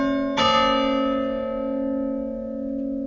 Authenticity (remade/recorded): recorded